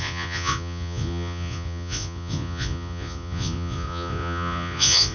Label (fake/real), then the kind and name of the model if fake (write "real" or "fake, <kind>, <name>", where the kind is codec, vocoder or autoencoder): fake, vocoder, Vocos